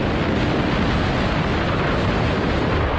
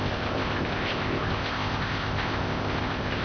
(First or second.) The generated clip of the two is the second